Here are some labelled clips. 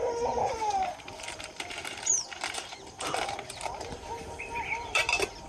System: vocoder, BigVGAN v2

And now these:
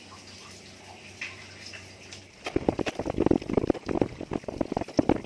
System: none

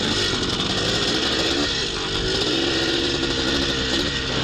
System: none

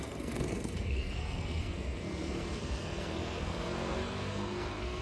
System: codec, SNAC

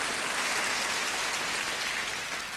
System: none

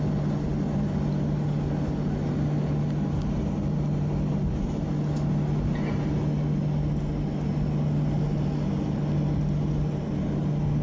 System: none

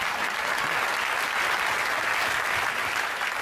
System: none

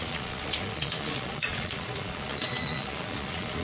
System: vocoder, Vocos